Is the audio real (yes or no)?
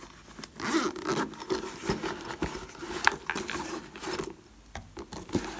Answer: yes